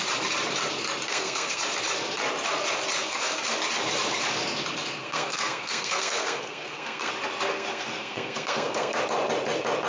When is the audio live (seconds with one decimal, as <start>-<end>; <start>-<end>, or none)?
0.0-1.1; 1.6-5.0; 7.1-7.5; 9.0-9.9